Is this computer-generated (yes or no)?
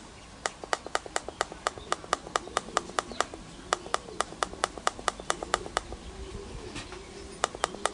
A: no